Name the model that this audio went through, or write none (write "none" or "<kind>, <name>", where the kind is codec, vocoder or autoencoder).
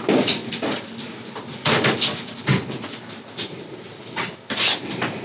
none